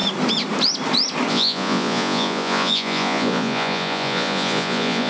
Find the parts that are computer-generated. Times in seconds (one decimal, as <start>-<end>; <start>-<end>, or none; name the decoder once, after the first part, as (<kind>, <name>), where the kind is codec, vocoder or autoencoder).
1.3-5.1 (vocoder, Vocos)